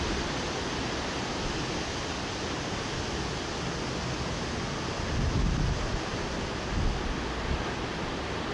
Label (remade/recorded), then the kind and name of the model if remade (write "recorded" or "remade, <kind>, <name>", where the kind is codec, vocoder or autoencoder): recorded